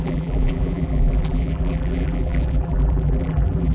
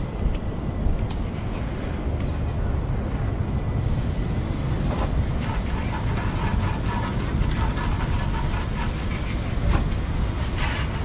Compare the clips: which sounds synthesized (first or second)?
first